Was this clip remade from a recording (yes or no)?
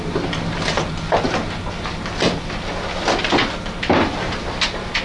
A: no